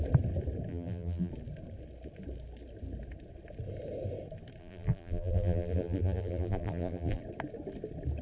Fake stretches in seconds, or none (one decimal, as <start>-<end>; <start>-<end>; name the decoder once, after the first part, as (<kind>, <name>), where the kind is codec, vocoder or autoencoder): 0.7-1.3 (vocoder, BigVGAN v2); 4.6-7.2